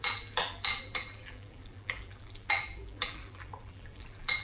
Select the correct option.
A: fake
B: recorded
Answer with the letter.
A